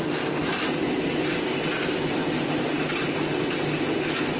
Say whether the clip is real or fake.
real